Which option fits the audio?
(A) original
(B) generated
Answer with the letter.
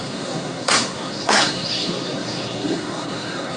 B